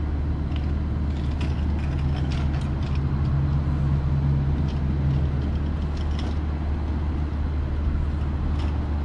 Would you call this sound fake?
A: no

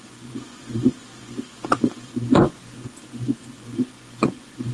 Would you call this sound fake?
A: yes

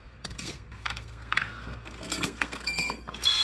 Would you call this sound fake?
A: yes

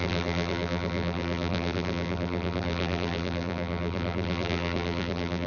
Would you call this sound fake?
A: yes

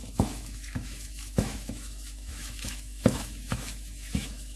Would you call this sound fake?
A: yes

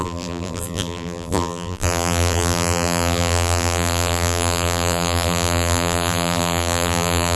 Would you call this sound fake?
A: yes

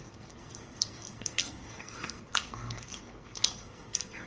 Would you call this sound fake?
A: yes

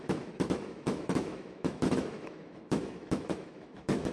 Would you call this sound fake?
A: yes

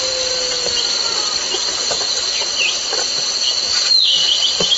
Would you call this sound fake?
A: no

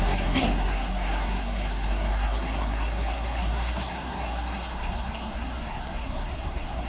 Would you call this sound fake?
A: yes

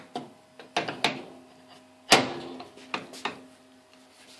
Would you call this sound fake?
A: no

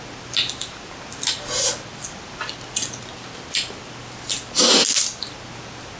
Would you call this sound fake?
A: no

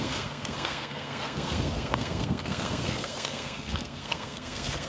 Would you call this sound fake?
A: yes